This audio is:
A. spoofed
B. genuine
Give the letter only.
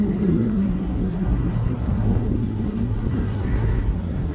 A